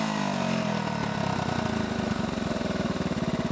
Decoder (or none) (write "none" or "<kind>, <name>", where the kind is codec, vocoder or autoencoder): none